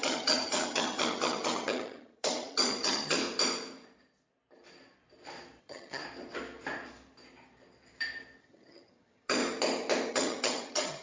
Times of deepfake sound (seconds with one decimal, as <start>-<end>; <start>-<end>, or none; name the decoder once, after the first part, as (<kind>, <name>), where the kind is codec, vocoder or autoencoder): 0.0-3.2 (vocoder, HiFi-GAN); 5.6-6.0; 8.4-9.4; 10.1-11.0